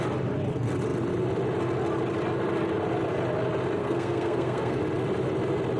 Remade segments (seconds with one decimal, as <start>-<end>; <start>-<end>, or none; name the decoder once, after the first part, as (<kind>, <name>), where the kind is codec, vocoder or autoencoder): 3.8-4.8 (codec, SNAC)